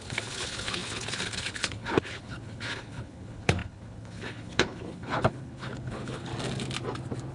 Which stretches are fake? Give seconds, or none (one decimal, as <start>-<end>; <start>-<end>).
0.0-6.3